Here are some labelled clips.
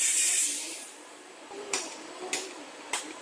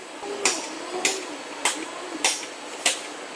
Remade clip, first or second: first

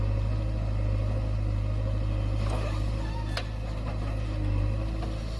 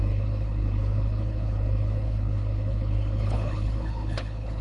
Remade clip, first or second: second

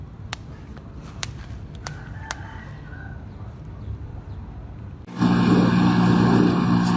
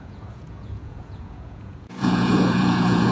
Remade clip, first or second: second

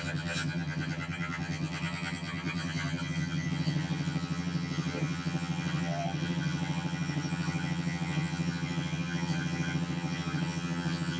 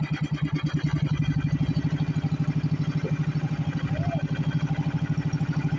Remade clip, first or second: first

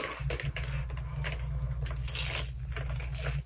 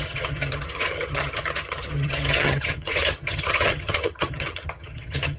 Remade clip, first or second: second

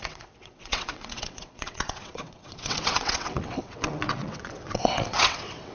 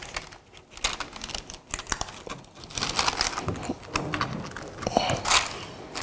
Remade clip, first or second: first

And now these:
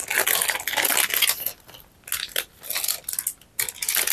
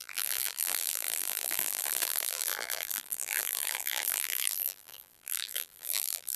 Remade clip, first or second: second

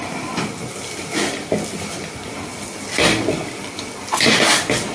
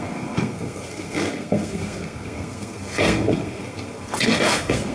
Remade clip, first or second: second